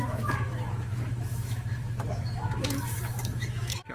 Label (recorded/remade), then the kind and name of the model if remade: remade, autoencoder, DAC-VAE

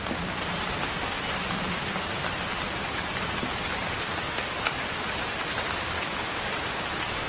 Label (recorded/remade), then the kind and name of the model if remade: recorded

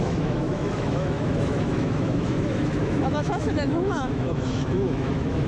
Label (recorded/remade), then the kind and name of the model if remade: remade, autoencoder, DAC-VAE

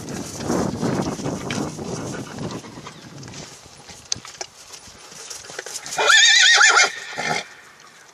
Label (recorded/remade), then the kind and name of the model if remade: recorded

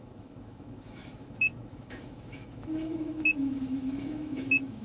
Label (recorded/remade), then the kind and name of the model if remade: remade, autoencoder, DAC-VAE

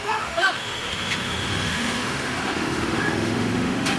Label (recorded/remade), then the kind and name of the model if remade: remade, autoencoder, DAC-VAE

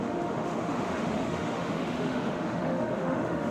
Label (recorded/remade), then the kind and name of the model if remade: remade, autoencoder, DAC-VAE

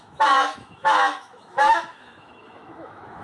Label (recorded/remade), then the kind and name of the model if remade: remade, autoencoder, DAC-VAE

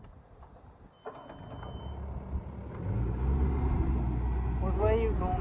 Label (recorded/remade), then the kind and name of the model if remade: recorded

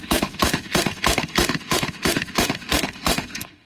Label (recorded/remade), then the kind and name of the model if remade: remade, autoencoder, DAC-VAE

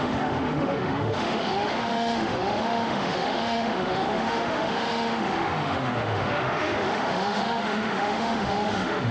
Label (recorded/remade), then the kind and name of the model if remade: remade, autoencoder, DAC-VAE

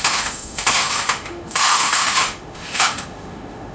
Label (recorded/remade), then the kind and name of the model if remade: remade, autoencoder, DAC-VAE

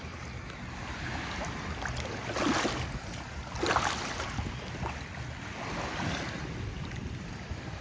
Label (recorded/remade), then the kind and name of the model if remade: recorded